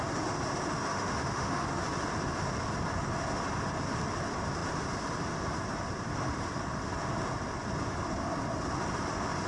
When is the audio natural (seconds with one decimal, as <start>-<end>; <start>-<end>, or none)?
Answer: 0.0-0.9; 1.8-9.5

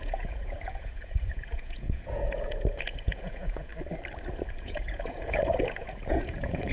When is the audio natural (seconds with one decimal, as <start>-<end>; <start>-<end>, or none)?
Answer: 3.7-4.6

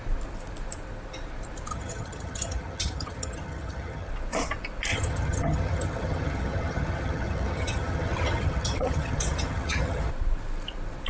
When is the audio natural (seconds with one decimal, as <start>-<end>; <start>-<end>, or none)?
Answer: 0.0-1.7; 4.1-4.9; 10.1-11.1